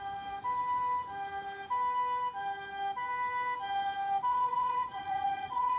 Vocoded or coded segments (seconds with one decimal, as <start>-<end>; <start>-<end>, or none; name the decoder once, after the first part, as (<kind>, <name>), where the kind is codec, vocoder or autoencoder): 4.3-5.8 (vocoder, Vocos)